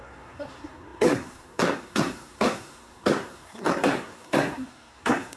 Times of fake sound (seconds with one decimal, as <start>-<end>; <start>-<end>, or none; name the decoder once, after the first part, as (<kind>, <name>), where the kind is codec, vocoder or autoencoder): 0.0-5.4 (codec, SNAC)